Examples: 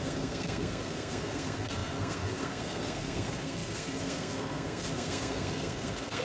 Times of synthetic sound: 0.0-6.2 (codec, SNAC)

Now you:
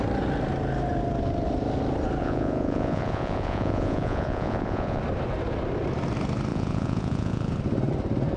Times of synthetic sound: 2.2-5.0 (vocoder, Vocos); 6.5-7.5

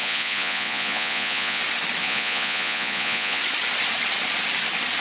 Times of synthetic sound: 0.0-1.6 (vocoder, Vocos); 2.0-3.4

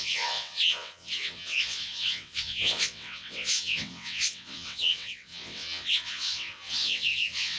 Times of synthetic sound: 0.0-7.6 (vocoder, WaveNeXt)